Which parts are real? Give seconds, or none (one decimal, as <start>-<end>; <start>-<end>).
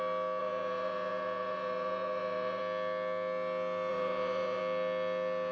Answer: 0.0-0.4; 2.6-3.9; 4.6-5.5